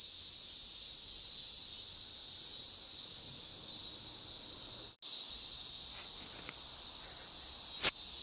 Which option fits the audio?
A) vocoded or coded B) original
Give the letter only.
B